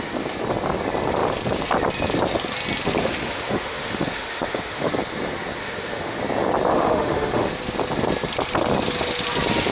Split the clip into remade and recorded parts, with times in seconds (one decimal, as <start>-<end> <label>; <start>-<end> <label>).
0.0-3.0 recorded; 3.0-4.9 remade; 4.9-5.6 recorded; 5.6-6.2 remade; 6.2-6.7 recorded; 6.7-7.5 remade; 7.5-9.7 recorded